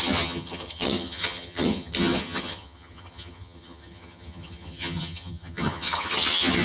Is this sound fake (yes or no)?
yes